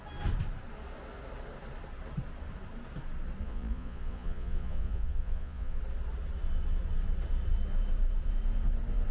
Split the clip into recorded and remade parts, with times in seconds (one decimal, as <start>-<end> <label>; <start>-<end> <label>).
0.0-3.4 recorded; 3.4-5.8 remade; 5.8-9.1 recorded